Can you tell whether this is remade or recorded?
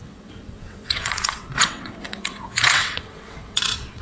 remade